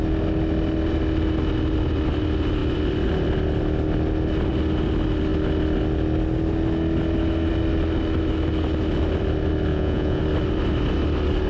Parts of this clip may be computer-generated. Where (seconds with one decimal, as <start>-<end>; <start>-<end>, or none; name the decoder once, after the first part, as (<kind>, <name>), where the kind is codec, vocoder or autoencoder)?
9.7-10.2 (vocoder, Vocos)